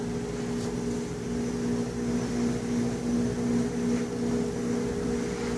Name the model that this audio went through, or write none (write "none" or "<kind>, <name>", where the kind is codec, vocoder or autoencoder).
vocoder, BigVGAN v2